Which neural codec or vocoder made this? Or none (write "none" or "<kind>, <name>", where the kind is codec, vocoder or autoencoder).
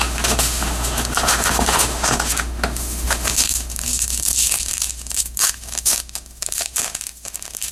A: autoencoder, DAC-VAE